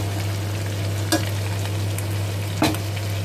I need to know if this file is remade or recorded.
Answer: recorded